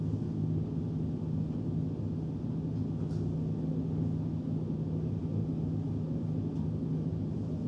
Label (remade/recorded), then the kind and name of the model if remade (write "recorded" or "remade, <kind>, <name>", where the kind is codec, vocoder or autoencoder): recorded